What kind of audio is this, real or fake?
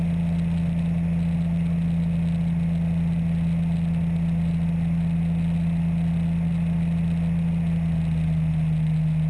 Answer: real